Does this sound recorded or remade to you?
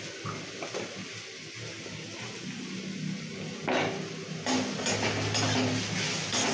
recorded